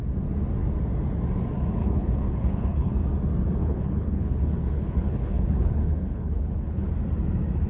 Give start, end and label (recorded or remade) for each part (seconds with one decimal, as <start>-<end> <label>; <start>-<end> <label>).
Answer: 0.0-1.8 recorded; 1.8-2.9 remade; 2.9-3.6 recorded; 3.6-6.9 remade; 6.9-7.7 recorded